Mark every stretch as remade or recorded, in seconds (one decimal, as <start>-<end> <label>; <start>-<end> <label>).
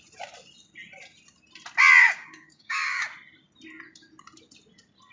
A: 0.0-2.0 recorded; 2.0-3.0 remade; 3.0-5.1 recorded